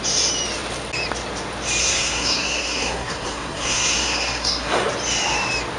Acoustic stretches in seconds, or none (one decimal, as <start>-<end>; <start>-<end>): 0.0-1.8; 4.9-5.8